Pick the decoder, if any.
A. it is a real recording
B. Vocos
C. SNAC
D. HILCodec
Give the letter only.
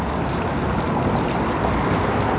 A